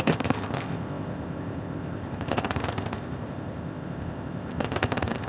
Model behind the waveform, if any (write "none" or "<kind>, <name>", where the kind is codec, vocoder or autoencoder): codec, ZipCodec